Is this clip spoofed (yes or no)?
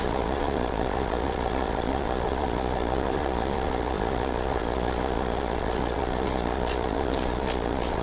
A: yes